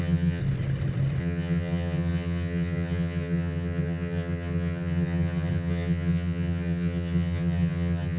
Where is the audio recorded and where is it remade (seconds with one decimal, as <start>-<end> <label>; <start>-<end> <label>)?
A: 0.0-0.4 remade; 0.4-1.2 recorded; 1.2-8.2 remade